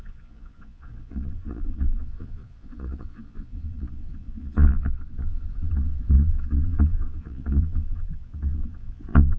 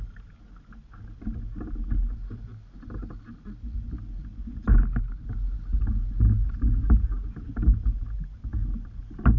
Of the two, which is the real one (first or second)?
second